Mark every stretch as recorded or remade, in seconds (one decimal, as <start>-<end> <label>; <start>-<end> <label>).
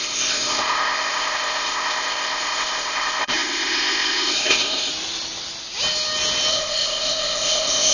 0.0-4.9 remade; 4.9-6.5 recorded; 6.5-7.9 remade